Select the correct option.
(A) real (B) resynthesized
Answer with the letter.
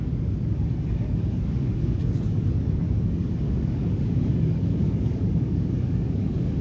B